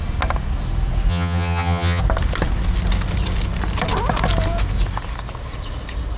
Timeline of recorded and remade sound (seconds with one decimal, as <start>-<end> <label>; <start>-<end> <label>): 0.0-1.1 recorded; 1.1-2.0 remade; 2.0-6.2 recorded